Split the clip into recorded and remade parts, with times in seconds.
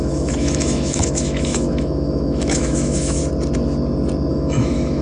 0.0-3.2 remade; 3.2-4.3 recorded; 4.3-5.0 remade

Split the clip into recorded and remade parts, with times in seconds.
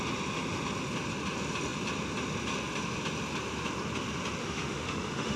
0.0-4.4 recorded; 4.4-5.4 remade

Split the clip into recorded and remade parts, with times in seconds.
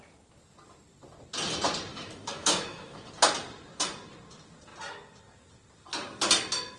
0.0-1.9 recorded; 1.9-3.1 remade; 3.1-6.8 recorded